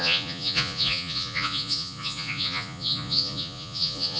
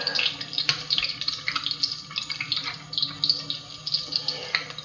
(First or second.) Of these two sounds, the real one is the second